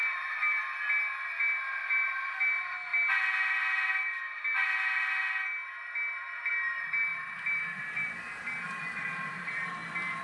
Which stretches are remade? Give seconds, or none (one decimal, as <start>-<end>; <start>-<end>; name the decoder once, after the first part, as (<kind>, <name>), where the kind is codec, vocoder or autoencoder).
0.0-0.6 (vocoder, BigVGAN v2); 7.1-9.7